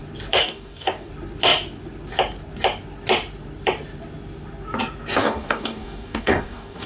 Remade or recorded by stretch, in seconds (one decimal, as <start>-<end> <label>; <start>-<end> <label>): 0.0-0.4 recorded; 0.4-1.1 remade; 1.1-5.2 recorded; 5.2-6.9 remade

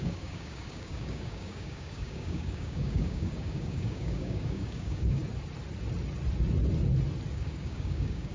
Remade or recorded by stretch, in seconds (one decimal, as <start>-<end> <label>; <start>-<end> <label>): 0.0-5.2 remade; 5.2-7.3 recorded; 7.3-8.3 remade

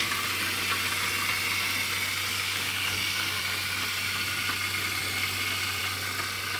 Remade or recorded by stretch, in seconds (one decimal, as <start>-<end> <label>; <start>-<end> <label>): 0.0-2.3 recorded; 2.3-3.4 remade; 3.4-6.6 recorded